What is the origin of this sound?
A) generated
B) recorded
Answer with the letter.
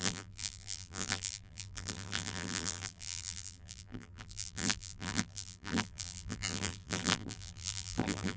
A